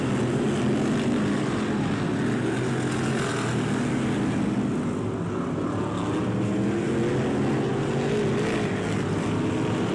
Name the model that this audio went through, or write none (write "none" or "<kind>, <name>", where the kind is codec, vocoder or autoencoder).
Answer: none